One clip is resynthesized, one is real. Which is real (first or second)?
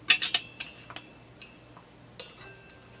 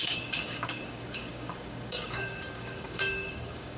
first